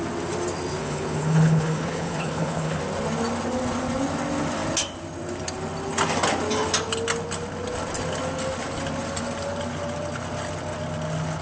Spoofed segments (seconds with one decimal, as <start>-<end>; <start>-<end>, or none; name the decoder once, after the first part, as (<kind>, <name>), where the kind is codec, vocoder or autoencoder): 0.8-2.8 (codec, HILCodec)